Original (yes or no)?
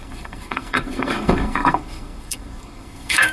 no